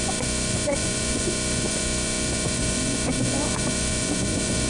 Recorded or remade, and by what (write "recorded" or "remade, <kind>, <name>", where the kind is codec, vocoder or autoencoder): remade, vocoder, Vocos